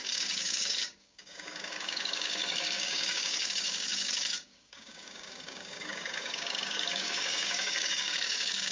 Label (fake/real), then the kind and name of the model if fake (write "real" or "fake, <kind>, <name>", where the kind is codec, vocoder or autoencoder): fake, codec, DAC